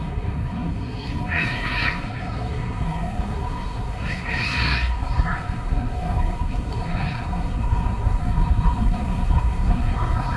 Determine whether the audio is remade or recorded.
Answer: remade